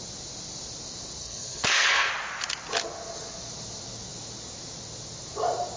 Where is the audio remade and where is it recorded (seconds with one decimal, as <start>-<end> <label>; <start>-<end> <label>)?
0.0-1.2 recorded; 1.2-2.1 remade; 2.1-5.8 recorded